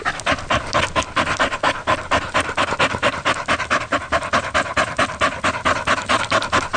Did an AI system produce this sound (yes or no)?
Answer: no